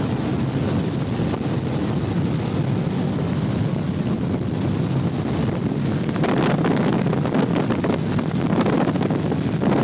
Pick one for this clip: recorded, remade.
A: recorded